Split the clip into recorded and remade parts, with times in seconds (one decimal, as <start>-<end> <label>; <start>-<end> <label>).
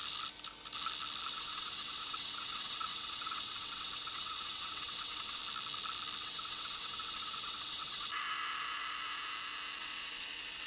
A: 0.0-1.3 recorded; 1.3-5.4 remade; 5.4-6.2 recorded; 6.2-8.1 remade; 8.1-9.8 recorded; 9.8-10.7 remade